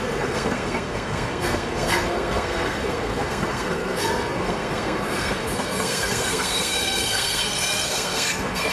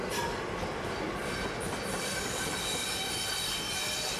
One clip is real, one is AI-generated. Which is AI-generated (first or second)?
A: first